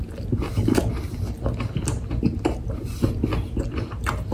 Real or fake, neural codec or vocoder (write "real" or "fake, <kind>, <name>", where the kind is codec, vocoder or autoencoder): real